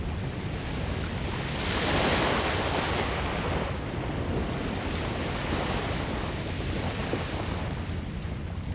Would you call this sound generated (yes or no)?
no